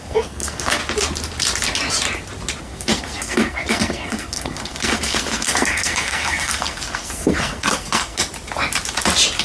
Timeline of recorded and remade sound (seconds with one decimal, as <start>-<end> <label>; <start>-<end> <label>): 0.0-0.8 remade; 0.8-2.6 recorded; 2.6-8.2 remade; 8.2-9.4 recorded